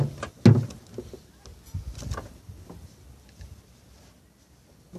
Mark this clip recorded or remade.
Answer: recorded